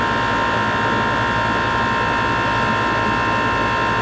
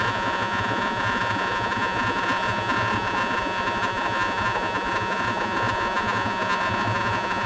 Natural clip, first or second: first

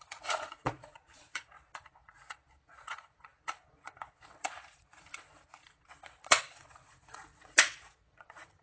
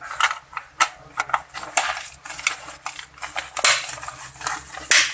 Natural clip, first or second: second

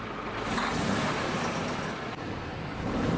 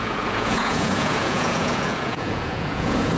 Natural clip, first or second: first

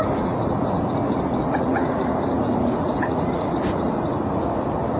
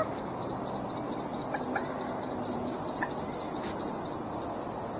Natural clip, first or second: second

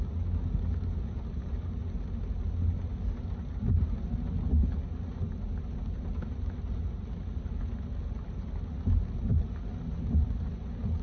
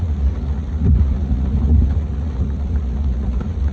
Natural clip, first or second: first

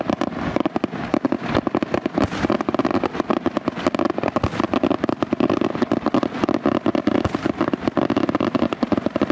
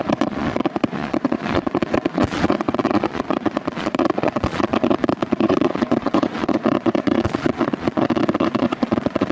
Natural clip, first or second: first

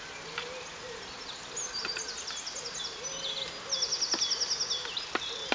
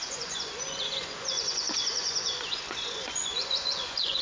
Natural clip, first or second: first